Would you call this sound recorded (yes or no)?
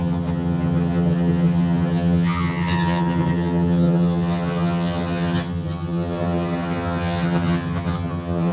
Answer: no